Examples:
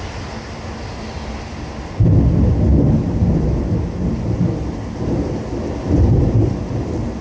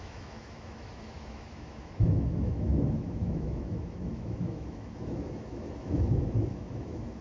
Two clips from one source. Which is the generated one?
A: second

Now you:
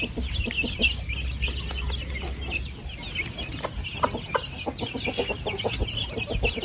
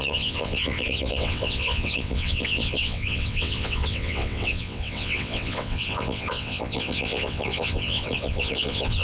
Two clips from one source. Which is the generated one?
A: second